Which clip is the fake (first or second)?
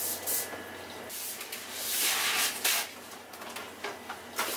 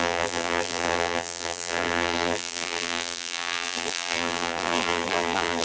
second